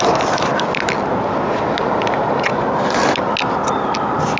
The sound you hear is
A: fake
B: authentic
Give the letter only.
B